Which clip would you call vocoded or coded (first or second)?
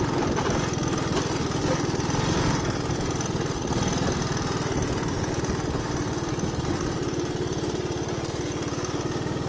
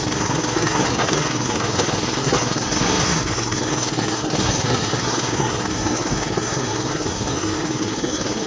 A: second